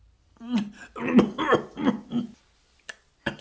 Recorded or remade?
recorded